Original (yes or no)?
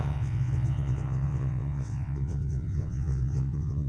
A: no